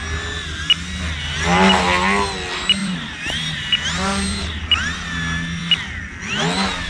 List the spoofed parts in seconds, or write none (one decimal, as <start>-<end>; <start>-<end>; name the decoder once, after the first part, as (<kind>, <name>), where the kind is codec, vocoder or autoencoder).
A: 2.8-4.4 (vocoder, BigVGAN v2)